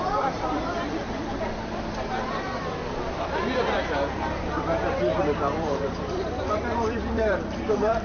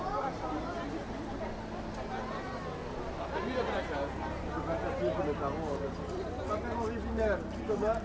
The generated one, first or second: first